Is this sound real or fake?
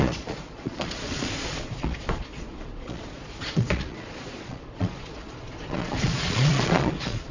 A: fake